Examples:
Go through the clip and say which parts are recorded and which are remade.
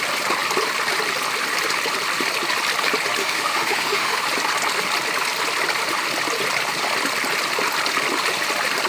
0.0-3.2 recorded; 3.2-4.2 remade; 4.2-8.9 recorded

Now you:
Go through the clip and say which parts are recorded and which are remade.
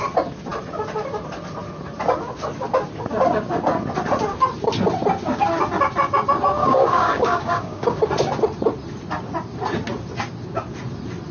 0.0-6.6 recorded; 6.6-8.0 remade; 8.0-11.3 recorded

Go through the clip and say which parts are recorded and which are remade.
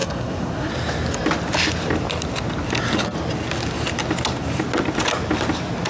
0.0-0.7 remade; 0.7-5.9 recorded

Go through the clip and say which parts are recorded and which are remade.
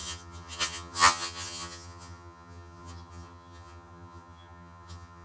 0.0-5.2 remade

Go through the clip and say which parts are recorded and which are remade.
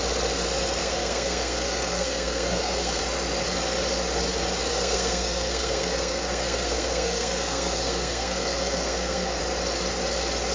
0.0-0.8 recorded; 0.8-3.0 remade; 3.0-4.7 recorded; 4.7-9.4 remade; 9.4-10.5 recorded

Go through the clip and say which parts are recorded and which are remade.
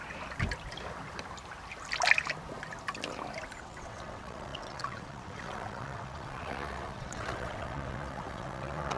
0.0-3.6 recorded; 3.6-9.0 remade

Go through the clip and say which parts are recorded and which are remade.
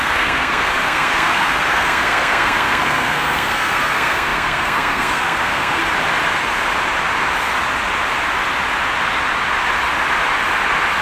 0.0-5.8 remade; 5.8-11.0 recorded